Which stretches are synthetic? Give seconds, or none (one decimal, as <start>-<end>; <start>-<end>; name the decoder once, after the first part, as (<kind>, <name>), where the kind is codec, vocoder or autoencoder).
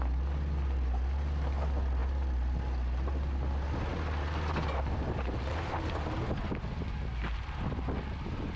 none